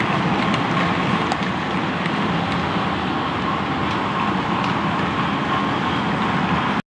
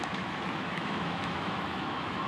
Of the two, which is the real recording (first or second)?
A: first